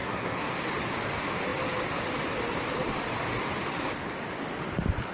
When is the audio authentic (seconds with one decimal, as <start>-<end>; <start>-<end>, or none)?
0.6-5.1